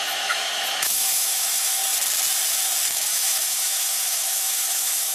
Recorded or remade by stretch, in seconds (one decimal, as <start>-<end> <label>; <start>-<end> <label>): 0.0-1.8 remade; 1.8-2.9 recorded; 2.9-5.1 remade